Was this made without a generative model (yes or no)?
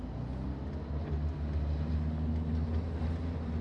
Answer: yes